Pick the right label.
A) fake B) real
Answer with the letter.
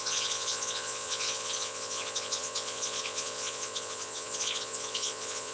A